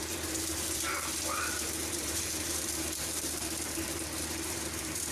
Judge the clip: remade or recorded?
remade